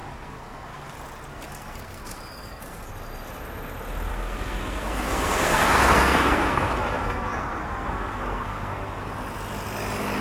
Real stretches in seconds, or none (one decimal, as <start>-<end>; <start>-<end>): 0.9-1.3; 2.9-4.1; 9.1-10.2